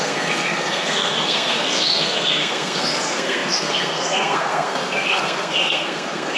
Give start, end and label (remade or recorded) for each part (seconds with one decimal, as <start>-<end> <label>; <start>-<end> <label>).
0.0-6.4 remade